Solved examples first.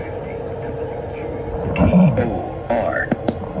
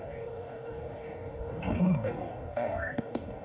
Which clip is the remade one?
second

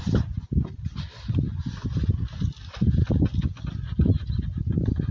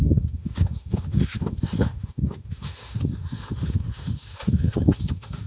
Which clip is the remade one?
second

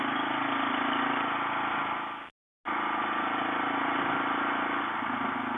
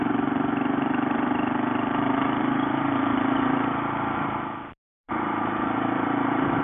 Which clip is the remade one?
second